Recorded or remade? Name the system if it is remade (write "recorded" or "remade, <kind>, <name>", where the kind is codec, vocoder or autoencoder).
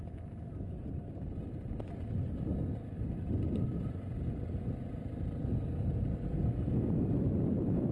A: recorded